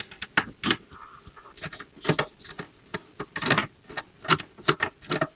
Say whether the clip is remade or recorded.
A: recorded